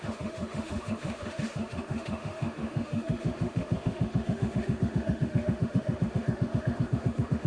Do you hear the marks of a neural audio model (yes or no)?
yes